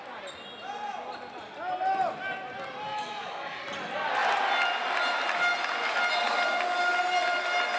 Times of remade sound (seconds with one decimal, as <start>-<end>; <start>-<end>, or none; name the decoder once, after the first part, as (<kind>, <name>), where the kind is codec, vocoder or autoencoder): 2.9-3.6 (autoencoder, DAC-VAE)